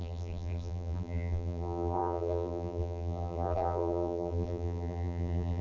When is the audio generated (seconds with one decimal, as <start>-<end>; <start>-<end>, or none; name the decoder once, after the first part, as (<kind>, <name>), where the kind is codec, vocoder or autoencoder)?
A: 0.0-5.6 (vocoder, BigVGAN v2)